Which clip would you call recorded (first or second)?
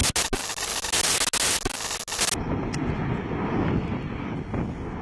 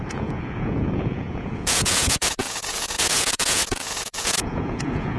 first